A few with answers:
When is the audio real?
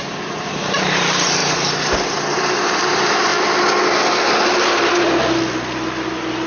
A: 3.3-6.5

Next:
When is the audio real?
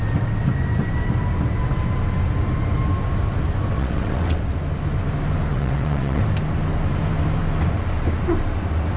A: 0.0-3.7; 4.4-5.5; 6.2-9.0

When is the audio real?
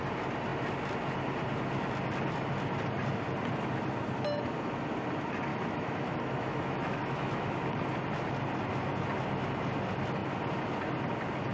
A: 0.0-5.5; 7.6-11.5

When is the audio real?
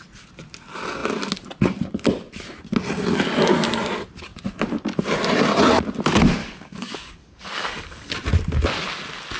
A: 0.0-6.4; 8.1-9.4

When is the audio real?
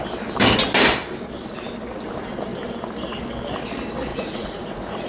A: 0.0-4.1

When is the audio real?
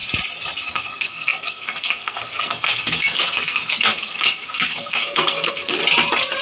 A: 0.0-0.7; 5.8-6.4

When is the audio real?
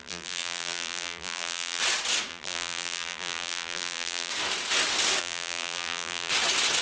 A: 1.8-2.3; 4.3-5.2; 6.3-6.8